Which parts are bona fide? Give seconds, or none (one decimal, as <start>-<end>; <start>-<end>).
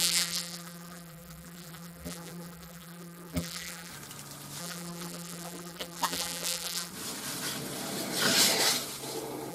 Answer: 3.9-4.6; 6.9-9.5